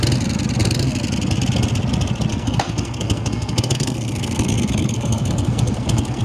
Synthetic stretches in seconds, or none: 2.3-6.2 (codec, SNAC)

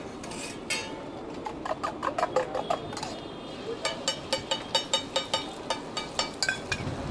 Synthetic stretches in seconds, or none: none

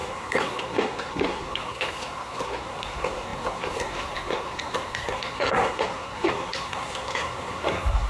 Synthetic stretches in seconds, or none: 0.0-8.1 (codec, SNAC)